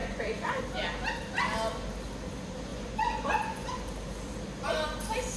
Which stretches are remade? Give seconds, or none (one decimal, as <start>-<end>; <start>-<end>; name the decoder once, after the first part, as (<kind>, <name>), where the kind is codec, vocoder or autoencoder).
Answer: 0.0-0.6 (vocoder, Vocos); 2.7-3.8